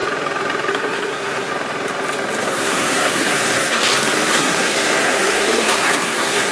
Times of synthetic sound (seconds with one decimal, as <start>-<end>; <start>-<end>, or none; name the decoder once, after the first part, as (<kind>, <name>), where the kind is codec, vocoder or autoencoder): 0.7-1.5 (codec, SNAC); 2.4-3.8; 4.3-6.5